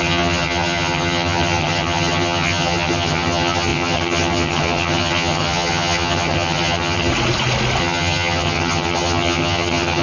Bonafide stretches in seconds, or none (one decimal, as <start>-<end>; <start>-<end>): 7.1-7.8